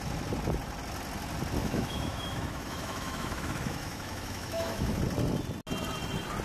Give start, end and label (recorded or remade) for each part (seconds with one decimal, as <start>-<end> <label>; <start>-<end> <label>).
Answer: 0.0-1.6 recorded; 1.6-5.0 remade; 5.0-6.4 recorded